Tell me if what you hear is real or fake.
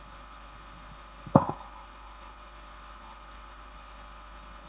fake